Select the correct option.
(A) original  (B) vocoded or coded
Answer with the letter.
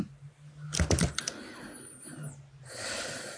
A